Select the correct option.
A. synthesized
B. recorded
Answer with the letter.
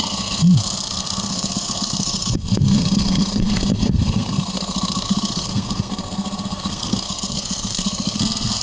A